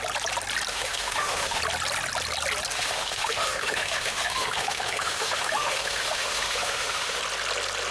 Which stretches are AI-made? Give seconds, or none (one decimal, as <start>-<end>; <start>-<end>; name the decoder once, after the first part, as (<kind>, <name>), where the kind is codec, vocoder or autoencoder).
0.7-1.6 (autoencoder, DAC-VAE); 2.7-7.2